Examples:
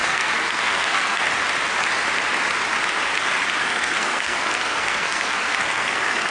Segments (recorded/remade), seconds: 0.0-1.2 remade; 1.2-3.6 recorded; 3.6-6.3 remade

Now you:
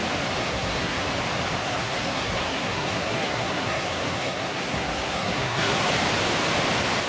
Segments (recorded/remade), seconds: 0.0-0.4 recorded; 0.4-1.1 remade; 1.1-1.6 recorded; 1.6-5.9 remade; 5.9-7.1 recorded

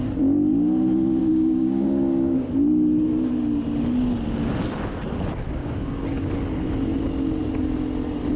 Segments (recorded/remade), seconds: 0.0-1.2 recorded; 1.2-2.5 remade; 2.5-5.6 recorded; 5.6-6.3 remade; 6.3-8.4 recorded

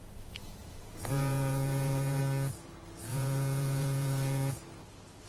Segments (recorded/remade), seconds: 0.0-0.6 recorded; 0.6-2.2 remade; 2.2-3.1 recorded; 3.1-4.6 remade; 4.6-5.3 recorded

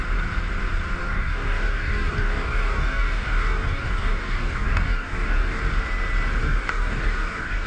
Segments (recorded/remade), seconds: 0.0-1.0 recorded; 1.0-5.6 remade; 5.6-6.4 recorded; 6.4-7.7 remade

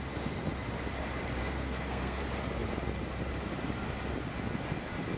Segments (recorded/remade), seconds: 0.0-1.4 recorded; 1.4-2.2 remade; 2.2-5.2 recorded

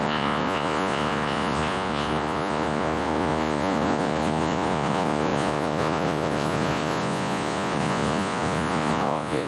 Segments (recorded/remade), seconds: 0.0-9.5 remade